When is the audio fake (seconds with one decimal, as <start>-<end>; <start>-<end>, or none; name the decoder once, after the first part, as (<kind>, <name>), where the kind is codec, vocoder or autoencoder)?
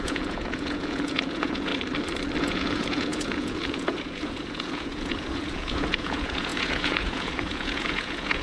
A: 0.0-1.7 (vocoder, Vocos); 2.4-8.4